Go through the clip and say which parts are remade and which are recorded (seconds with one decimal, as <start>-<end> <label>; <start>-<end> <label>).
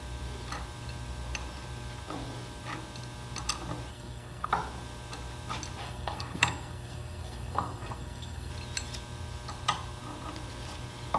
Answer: 0.0-3.9 recorded; 3.9-4.5 remade; 4.5-5.8 recorded; 5.8-8.5 remade; 8.5-11.2 recorded